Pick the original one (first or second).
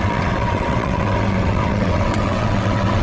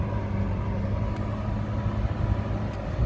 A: second